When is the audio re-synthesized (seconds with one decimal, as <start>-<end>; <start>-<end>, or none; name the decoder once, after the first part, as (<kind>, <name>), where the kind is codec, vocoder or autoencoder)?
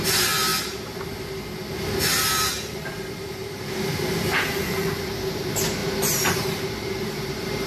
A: 0.0-0.5 (vocoder, BigVGAN v2); 2.2-7.7